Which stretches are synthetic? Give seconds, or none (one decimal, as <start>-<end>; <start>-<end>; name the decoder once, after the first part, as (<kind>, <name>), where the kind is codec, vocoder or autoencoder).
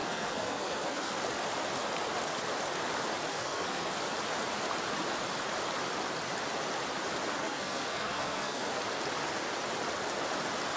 0.0-1.1 (codec, SNAC); 3.3-3.9; 7.4-8.8